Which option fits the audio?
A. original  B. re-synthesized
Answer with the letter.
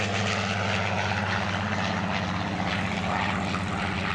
A